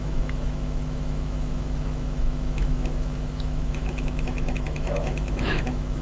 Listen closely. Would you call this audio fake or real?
fake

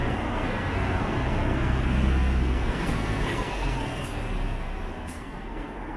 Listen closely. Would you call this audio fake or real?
fake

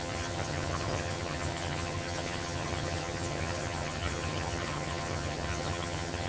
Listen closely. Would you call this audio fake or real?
fake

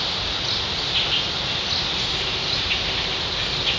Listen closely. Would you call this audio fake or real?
real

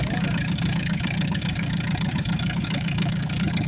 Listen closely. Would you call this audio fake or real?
fake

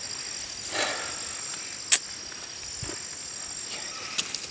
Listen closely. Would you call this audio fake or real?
real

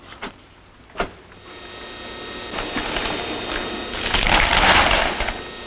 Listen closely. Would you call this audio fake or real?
real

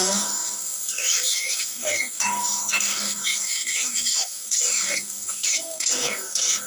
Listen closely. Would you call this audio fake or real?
fake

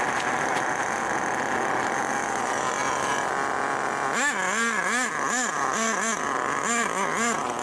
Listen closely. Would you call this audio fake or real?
real